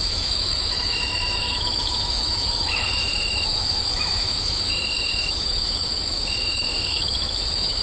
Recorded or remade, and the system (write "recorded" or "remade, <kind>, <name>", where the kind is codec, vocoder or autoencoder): remade, autoencoder, DAC-VAE